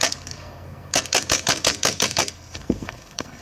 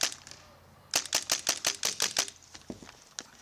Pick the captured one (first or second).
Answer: second